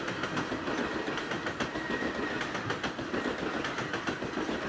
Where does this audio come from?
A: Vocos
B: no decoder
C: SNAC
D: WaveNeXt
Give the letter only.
B